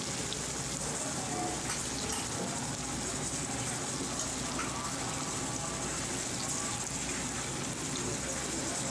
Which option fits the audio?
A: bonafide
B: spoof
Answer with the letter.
A